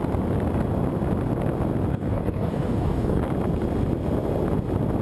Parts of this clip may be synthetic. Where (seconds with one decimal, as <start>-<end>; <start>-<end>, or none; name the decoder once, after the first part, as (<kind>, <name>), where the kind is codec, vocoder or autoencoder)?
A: 1.9-3.2 (codec, DAC)